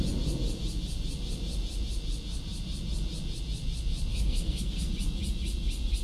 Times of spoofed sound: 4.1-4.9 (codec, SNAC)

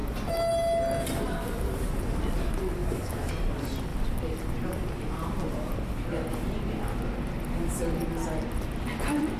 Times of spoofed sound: 2.8-3.3 (autoencoder, DAC-VAE)

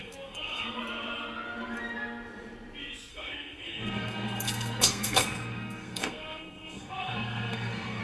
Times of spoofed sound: 0.0-0.8 (codec, SNAC); 3.1-8.0